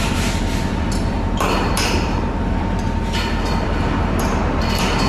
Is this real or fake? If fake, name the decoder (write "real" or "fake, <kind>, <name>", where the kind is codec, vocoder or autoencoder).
fake, vocoder, BigVGAN v2